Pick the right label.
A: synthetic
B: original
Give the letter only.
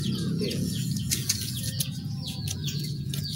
A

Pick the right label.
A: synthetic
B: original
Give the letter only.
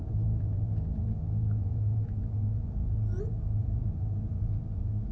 A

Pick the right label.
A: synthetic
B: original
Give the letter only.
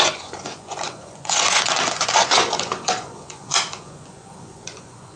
A